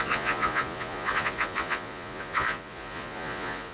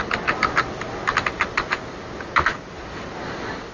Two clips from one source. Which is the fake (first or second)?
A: first